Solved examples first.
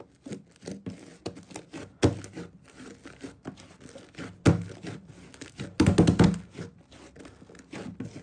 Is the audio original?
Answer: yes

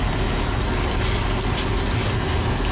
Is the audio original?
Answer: yes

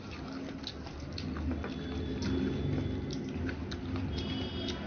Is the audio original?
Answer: yes